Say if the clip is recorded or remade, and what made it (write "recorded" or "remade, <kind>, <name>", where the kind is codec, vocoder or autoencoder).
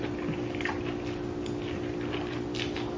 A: recorded